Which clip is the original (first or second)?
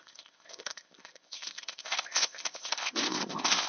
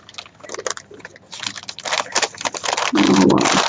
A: second